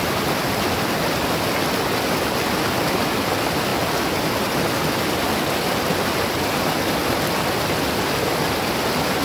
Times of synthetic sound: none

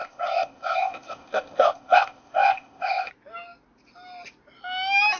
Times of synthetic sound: 0.0-3.1 (codec, ZipCodec)

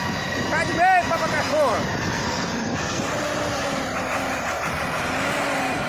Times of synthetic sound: 2.1-3.0 (codec, SNAC)

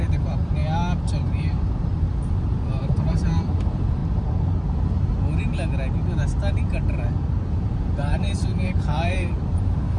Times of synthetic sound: 0.0-0.6 (vocoder, BigVGAN v2); 1.2-4.0; 7.5-10.0

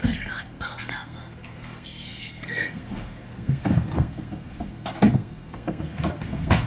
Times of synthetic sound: 0.0-6.7 (codec, SNAC)

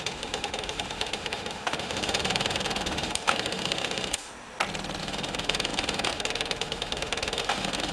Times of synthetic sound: 0.0-4.3 (autoencoder, DAC-VAE); 5.0-7.9

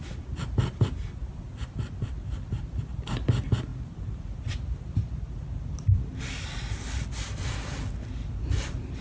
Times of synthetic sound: none

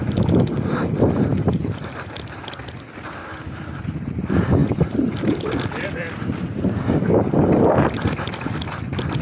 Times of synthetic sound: none